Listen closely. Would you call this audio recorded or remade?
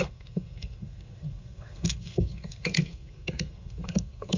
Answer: remade